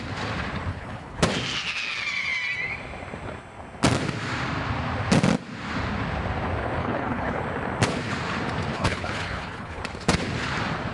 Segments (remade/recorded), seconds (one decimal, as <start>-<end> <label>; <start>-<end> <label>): 0.0-0.7 recorded; 0.7-1.2 remade; 1.2-6.8 recorded; 6.8-7.4 remade; 7.4-8.7 recorded; 8.7-9.8 remade; 9.8-10.9 recorded